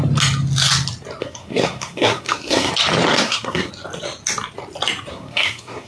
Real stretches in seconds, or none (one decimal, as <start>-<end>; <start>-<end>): 0.0-1.2; 2.7-3.1; 3.7-5.1